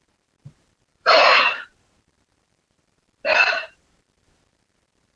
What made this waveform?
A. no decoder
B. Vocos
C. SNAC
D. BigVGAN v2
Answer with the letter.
D